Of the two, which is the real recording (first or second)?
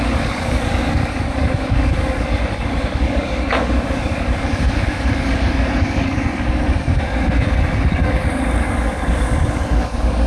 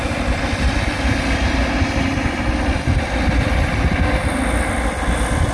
second